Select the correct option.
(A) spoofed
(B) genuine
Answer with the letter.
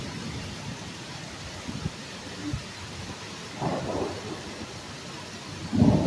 B